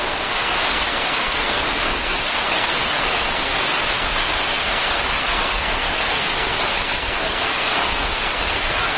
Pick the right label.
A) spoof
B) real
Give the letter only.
A